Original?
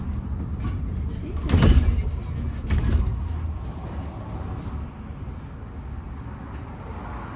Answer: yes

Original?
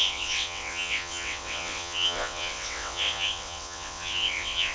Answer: no